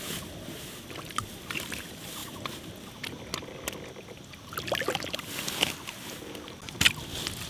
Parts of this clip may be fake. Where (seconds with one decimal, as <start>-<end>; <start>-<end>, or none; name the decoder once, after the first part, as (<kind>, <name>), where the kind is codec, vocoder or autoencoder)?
none